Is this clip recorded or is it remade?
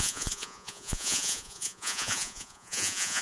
remade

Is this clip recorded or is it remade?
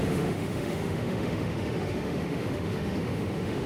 remade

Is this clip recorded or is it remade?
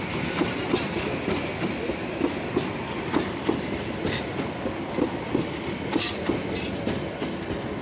recorded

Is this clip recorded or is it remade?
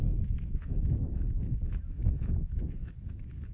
remade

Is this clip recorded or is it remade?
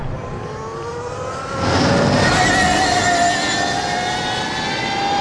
recorded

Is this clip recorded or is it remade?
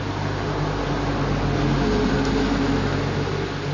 recorded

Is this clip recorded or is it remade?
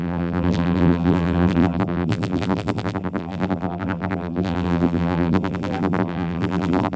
remade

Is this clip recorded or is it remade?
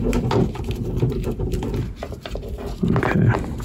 recorded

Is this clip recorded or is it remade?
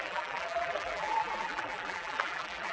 remade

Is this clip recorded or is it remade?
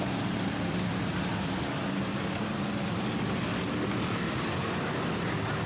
recorded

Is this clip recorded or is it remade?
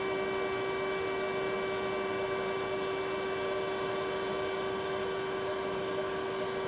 recorded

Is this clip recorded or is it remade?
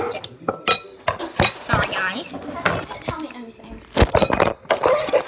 recorded